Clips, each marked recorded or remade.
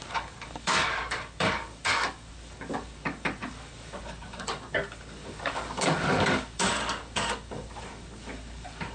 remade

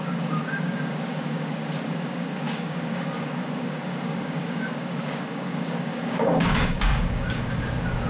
remade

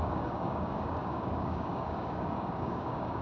remade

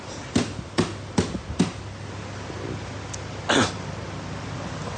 recorded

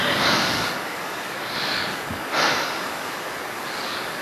remade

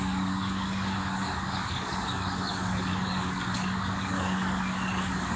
remade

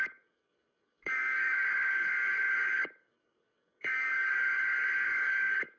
remade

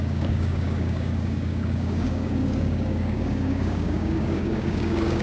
remade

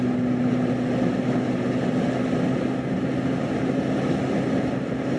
recorded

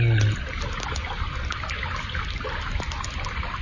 recorded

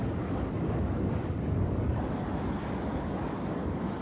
remade